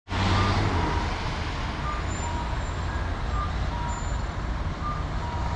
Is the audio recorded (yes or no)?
yes